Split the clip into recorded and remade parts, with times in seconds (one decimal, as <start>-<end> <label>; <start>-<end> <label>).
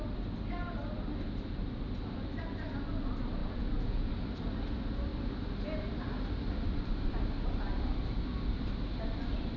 0.0-3.4 recorded; 3.4-4.1 remade; 4.1-9.6 recorded